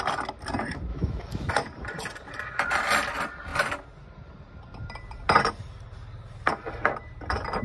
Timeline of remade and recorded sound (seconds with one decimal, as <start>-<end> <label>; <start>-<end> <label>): 0.0-0.9 recorded; 0.9-1.5 remade; 1.5-7.6 recorded

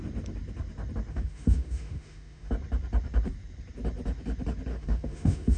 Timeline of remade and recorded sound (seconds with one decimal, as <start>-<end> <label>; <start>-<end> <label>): 0.0-1.1 recorded; 1.1-2.5 remade; 2.5-4.7 recorded; 4.7-5.6 remade

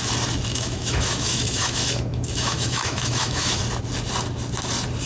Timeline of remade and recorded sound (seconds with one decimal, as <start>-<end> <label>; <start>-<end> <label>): 0.0-0.5 recorded; 0.5-3.6 remade; 3.6-5.1 recorded

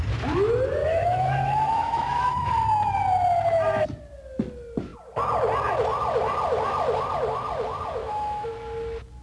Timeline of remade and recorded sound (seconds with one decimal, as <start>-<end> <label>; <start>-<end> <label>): 0.0-0.8 recorded; 0.8-2.5 remade; 2.5-8.0 recorded; 8.0-8.5 remade; 8.5-9.2 recorded